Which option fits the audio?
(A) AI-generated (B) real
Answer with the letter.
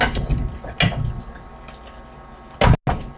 B